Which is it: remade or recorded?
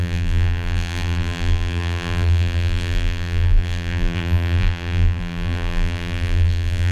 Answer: remade